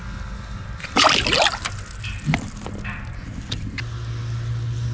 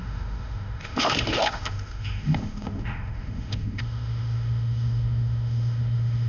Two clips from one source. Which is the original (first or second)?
first